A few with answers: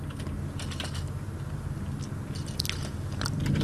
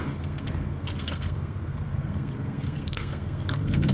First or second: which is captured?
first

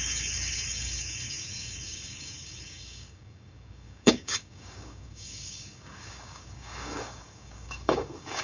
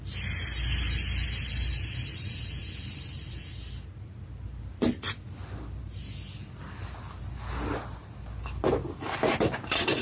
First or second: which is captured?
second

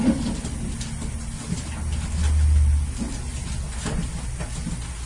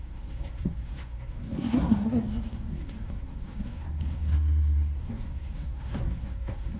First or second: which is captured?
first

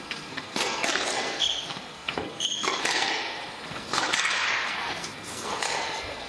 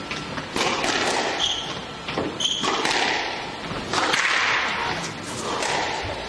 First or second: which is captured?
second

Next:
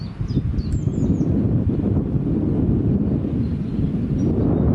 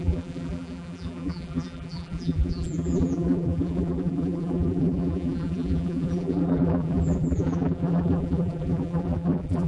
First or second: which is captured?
first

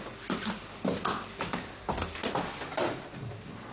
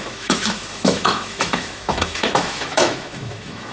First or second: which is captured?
first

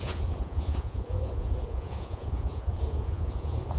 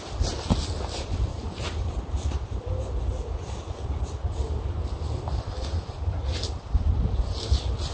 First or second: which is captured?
second